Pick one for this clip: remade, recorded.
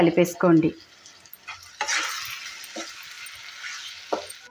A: recorded